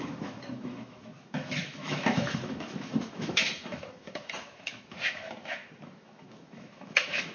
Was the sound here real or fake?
fake